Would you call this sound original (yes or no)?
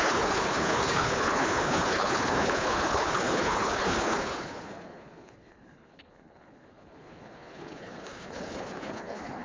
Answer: no